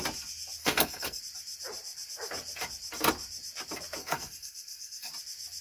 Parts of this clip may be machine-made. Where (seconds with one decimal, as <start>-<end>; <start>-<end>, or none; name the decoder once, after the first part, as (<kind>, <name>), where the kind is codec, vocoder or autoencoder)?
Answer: 0.6-1.2 (codec, SNAC); 4.0-5.1